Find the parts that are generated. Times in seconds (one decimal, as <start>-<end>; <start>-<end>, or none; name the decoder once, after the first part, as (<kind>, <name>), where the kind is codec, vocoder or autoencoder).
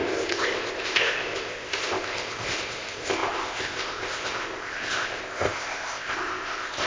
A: 0.0-6.9 (codec, ZipCodec)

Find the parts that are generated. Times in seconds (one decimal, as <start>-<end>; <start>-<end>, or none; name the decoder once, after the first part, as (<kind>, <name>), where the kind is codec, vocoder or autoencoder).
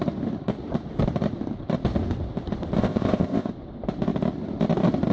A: 2.8-3.5 (codec, ZipCodec)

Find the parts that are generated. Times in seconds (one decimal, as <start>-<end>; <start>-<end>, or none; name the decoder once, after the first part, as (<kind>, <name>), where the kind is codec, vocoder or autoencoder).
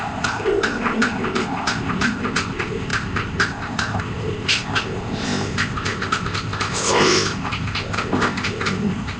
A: 0.0-9.2 (codec, ZipCodec)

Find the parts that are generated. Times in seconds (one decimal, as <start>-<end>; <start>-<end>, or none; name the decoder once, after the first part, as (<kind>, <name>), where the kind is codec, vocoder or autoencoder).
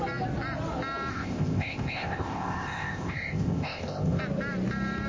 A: 1.1-4.2 (codec, ZipCodec)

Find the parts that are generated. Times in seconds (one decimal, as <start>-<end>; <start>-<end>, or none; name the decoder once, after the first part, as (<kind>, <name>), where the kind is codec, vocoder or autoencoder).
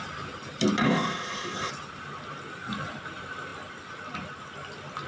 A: 0.8-1.7 (codec, ZipCodec)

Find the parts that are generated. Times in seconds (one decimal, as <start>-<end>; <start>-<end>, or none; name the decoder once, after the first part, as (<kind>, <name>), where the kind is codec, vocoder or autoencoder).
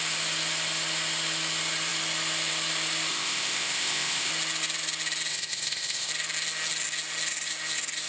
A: 3.1-4.3 (codec, ZipCodec); 5.3-6.1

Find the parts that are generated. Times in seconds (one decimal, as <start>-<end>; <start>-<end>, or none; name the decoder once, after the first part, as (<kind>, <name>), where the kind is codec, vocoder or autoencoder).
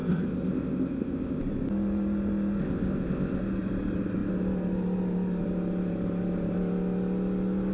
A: 0.0-1.4 (codec, ZipCodec); 2.6-3.4